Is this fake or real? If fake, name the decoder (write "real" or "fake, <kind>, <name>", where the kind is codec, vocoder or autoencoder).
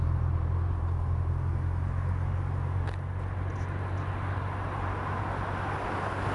real